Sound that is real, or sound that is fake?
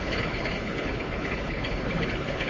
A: fake